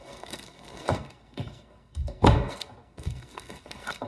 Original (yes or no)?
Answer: no